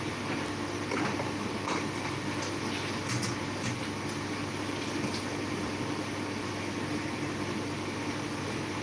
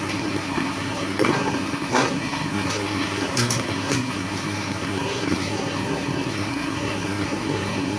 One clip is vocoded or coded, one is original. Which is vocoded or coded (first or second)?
second